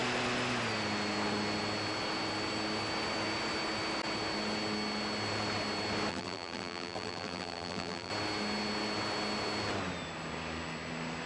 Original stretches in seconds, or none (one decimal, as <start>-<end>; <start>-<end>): 0.0-6.1; 8.1-11.3